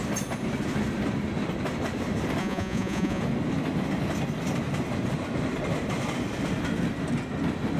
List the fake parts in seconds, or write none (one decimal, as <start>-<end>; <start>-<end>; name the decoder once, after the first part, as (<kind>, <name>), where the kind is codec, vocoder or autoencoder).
2.4-3.2 (vocoder, Vocos)